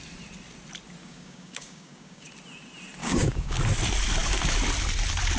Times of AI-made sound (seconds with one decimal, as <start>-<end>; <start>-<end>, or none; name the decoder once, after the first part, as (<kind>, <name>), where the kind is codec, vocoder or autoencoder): 1.0-2.3 (codec, DAC); 3.0-3.6